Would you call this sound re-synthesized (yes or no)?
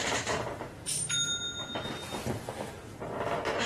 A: no